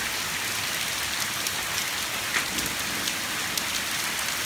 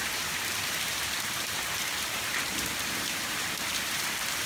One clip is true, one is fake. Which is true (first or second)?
first